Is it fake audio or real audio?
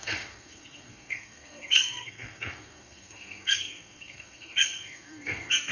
fake